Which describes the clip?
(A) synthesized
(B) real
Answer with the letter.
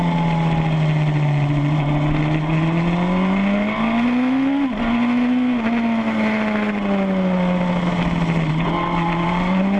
B